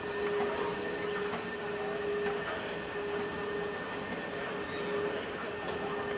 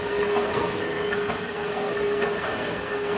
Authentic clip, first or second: first